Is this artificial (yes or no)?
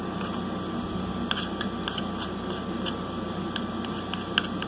no